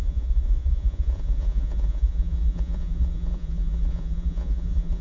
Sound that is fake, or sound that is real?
fake